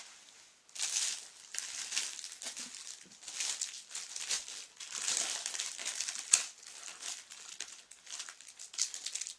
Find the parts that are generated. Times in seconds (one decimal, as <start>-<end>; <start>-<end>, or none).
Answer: none